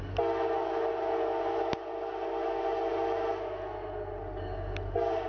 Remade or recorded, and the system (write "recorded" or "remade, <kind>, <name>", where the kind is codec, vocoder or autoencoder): recorded